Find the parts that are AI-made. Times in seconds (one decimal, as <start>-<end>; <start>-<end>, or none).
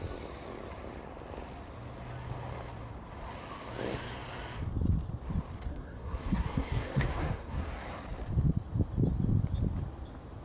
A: 5.7-7.7